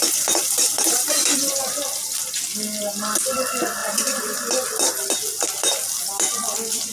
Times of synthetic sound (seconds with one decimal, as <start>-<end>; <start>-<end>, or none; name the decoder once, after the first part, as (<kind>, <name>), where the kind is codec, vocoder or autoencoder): 0.0-1.2 (vocoder, BigVGAN v2); 3.8-4.4